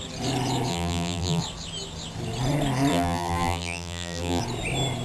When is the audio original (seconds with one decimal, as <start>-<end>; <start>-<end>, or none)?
0.0-0.7; 1.4-2.9; 4.4-5.0